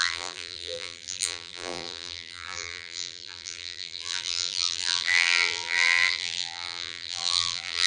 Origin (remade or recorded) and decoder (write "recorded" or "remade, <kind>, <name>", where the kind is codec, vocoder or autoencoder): remade, vocoder, BigVGAN v2